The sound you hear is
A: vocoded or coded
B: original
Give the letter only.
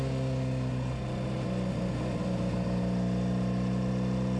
B